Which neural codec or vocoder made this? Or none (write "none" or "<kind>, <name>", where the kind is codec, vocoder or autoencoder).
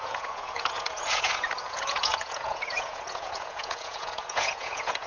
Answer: vocoder, Vocos